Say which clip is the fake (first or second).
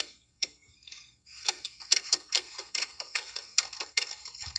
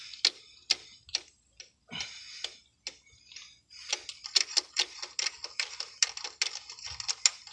first